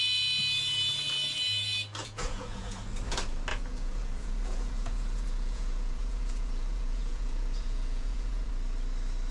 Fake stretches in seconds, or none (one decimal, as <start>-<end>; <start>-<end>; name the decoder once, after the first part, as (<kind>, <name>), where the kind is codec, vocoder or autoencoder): 2.0-2.8 (vocoder, Vocos); 3.5-8.5